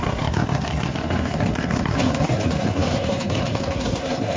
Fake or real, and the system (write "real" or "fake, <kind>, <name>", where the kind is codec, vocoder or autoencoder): fake, codec, SNAC